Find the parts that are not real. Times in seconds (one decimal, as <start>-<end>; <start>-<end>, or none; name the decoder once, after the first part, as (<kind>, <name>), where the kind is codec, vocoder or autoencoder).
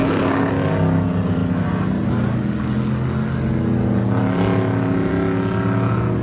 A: 0.0-0.5 (codec, SNAC)